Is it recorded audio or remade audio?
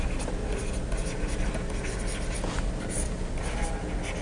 recorded